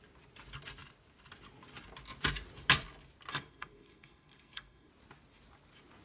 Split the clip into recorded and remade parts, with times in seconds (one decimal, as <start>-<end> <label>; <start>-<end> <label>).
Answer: 0.0-3.3 recorded; 3.3-4.9 remade; 4.9-6.0 recorded